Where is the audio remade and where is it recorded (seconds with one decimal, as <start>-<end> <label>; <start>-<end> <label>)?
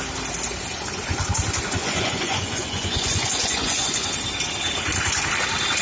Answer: 0.0-1.8 recorded; 1.8-4.2 remade; 4.2-5.8 recorded